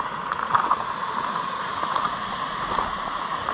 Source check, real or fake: fake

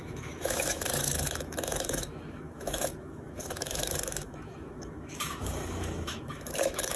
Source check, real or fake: fake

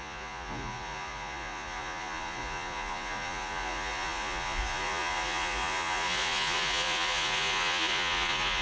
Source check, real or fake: fake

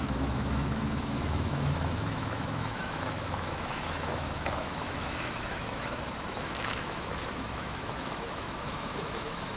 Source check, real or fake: fake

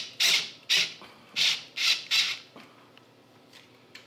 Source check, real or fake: fake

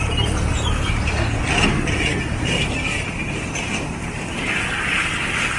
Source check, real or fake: real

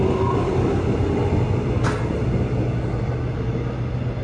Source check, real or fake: real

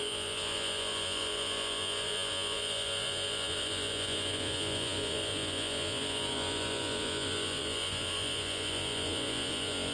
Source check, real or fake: fake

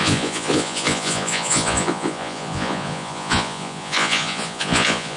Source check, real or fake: fake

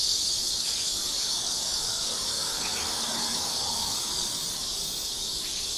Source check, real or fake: fake